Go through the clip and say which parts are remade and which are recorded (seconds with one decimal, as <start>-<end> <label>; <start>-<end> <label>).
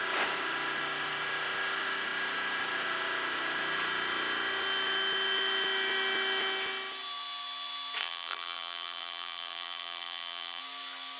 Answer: 0.0-8.0 recorded; 8.0-10.6 remade; 10.6-11.2 recorded